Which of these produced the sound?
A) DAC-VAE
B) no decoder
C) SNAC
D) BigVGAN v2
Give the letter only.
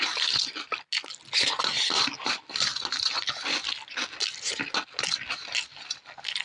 B